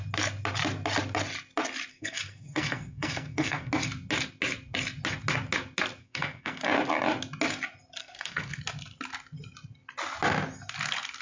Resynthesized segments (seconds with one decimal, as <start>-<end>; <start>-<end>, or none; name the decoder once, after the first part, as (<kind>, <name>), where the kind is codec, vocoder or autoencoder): 1.9-3.7 (codec, SNAC); 6.0-6.6; 8.0-8.6